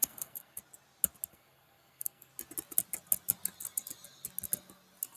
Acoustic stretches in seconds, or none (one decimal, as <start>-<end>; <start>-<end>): 0.6-1.3; 2.3-5.2